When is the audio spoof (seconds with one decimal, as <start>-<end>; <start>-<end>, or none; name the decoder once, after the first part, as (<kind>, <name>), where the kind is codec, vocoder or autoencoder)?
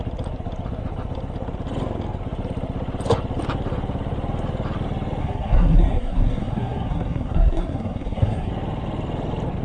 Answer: 5.2-8.5 (codec, SNAC)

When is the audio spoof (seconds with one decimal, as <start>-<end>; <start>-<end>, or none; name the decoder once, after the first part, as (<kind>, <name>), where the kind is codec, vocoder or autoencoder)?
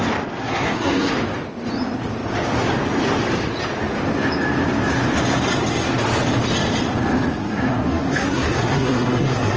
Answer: 0.4-1.1 (codec, SNAC); 7.4-9.6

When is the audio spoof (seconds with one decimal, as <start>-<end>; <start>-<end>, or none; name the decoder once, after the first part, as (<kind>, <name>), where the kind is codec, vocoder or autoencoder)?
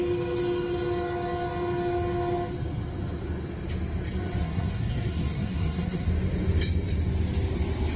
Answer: 4.4-6.1 (codec, SNAC)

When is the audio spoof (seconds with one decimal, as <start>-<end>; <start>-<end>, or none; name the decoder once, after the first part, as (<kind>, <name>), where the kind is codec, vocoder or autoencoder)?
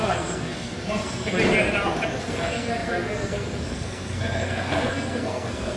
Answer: 0.0-1.3 (codec, SNAC); 2.2-5.8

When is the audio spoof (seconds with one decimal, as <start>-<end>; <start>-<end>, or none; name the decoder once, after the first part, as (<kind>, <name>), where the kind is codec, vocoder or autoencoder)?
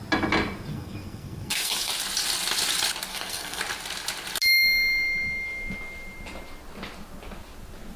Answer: 0.7-1.9 (codec, SNAC); 3.1-3.6